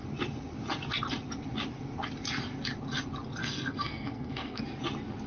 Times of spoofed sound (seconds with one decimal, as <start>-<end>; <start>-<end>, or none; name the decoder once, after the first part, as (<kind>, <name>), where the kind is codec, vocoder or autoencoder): 3.4-4.6 (codec, SNAC)